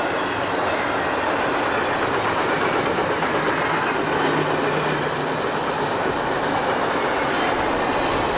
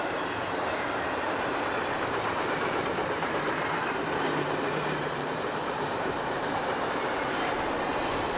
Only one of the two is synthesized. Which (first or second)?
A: second